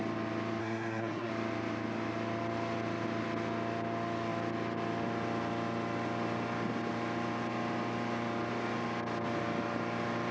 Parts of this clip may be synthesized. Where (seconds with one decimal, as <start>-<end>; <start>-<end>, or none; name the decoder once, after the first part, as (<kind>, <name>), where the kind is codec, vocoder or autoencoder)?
0.6-1.3 (codec, SNAC)